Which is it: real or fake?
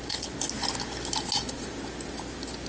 real